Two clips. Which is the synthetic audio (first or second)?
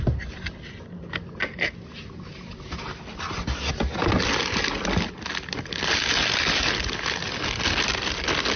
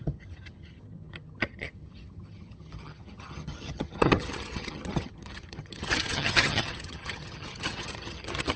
second